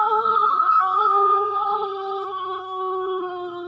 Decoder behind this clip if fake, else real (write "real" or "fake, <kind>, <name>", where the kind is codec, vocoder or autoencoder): fake, codec, SNAC